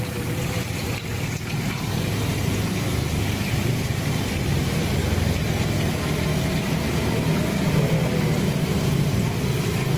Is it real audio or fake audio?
real